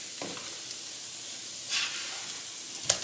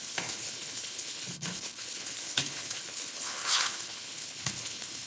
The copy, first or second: second